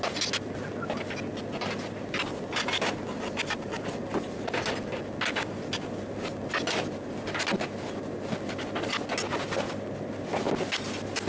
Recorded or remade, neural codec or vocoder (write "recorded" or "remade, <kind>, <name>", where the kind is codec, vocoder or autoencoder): recorded